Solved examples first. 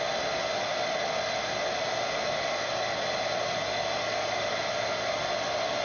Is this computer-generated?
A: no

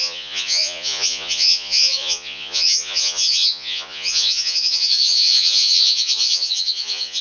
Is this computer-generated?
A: yes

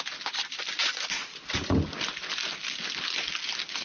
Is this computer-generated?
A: no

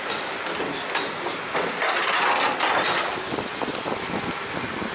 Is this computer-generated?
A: no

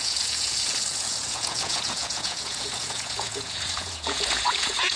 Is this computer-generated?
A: yes